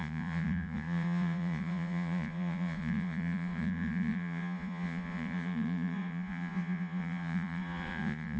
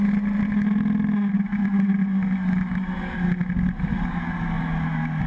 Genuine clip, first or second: second